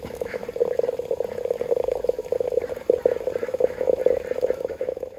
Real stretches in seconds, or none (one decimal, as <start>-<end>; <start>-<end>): 0.4-3.5; 4.0-4.7